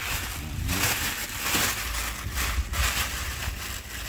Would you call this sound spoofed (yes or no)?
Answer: no